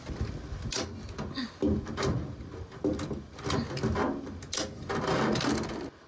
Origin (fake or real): real